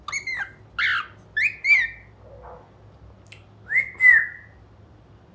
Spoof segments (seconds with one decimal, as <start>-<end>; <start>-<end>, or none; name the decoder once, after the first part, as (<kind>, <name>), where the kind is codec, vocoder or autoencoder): none